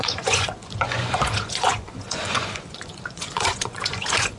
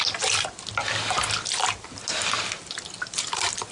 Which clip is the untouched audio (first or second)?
second